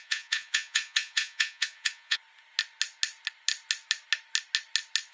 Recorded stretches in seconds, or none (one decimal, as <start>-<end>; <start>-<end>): 2.2-5.1